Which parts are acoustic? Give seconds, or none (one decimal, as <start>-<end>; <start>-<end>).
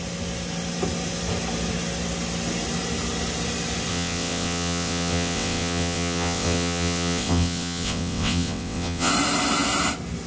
0.0-3.9; 9.1-10.3